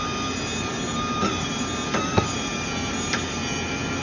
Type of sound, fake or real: real